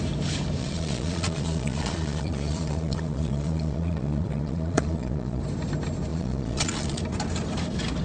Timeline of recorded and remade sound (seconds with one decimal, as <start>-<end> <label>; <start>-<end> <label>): 0.0-0.6 recorded; 0.6-5.4 remade; 5.4-6.1 recorded; 6.1-7.0 remade; 7.0-8.0 recorded